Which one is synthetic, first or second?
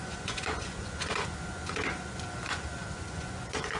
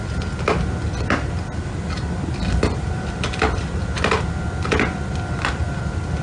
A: first